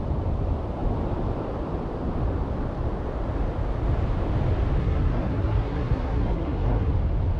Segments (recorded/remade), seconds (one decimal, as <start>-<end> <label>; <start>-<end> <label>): 0.0-4.8 recorded; 4.8-6.9 remade; 6.9-7.4 recorded

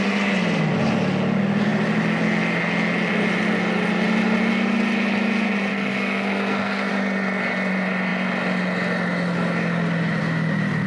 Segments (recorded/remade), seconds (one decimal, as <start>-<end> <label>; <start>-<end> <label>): 0.0-5.7 recorded; 5.7-6.9 remade; 6.9-10.9 recorded

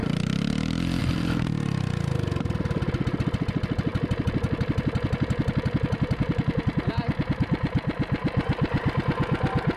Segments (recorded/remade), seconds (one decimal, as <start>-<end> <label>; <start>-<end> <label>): 0.0-9.8 recorded

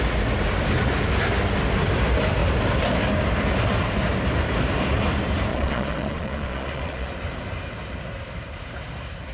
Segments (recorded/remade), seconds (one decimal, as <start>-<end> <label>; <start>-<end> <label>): 0.0-5.5 recorded; 5.5-7.1 remade; 7.1-9.3 recorded

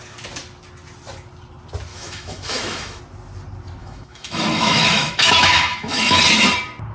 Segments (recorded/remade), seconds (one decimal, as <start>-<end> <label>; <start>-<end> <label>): 0.0-1.9 recorded; 1.9-3.0 remade; 3.0-3.8 recorded; 3.8-6.2 remade; 6.2-6.9 recorded

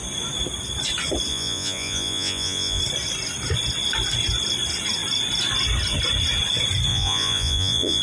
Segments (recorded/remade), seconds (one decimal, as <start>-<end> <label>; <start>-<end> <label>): 0.0-1.3 recorded; 1.3-2.8 remade; 2.8-6.9 recorded; 6.9-8.0 remade